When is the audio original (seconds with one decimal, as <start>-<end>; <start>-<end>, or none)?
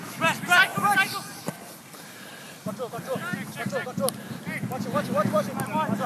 0.0-0.7; 2.7-6.1